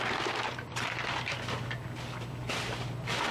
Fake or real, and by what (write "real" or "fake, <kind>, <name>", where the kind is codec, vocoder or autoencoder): real